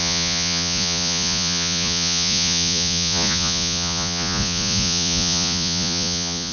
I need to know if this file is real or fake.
fake